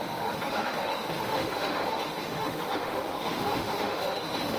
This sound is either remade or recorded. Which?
remade